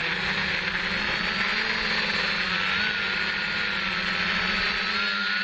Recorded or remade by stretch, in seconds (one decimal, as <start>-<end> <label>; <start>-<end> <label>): 0.0-5.4 recorded